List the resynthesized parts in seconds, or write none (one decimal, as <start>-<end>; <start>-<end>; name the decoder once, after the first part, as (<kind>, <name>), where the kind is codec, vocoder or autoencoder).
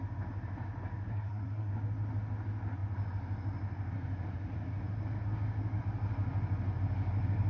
1.1-1.7 (codec, SNAC)